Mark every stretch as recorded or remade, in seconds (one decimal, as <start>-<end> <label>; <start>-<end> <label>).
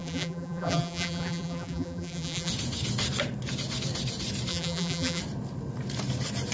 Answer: 0.0-2.5 remade; 2.5-4.5 recorded; 4.5-5.2 remade; 5.2-6.5 recorded